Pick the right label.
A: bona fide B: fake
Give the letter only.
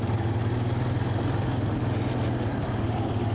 A